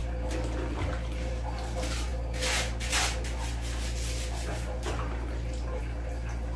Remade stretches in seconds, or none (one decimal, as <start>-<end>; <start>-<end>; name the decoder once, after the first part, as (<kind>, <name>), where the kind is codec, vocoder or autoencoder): none